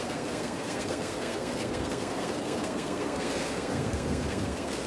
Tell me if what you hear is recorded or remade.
remade